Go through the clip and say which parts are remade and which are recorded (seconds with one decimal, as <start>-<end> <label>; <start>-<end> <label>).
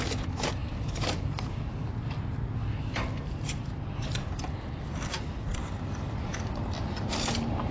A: 0.0-7.7 recorded